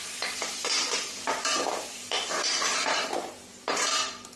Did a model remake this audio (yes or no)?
yes